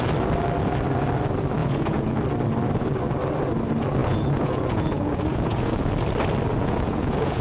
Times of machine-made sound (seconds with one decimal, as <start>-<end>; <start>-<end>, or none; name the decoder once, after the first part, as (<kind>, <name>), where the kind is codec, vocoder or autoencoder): 1.6-2.2 (vocoder, Vocos); 4.0-5.9; 6.5-7.4